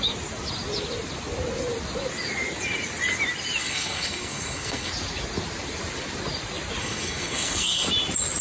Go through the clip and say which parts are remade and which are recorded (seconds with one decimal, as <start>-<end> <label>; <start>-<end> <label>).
0.0-3.6 recorded; 3.6-4.9 remade; 4.9-6.8 recorded; 6.8-7.9 remade; 7.9-8.4 recorded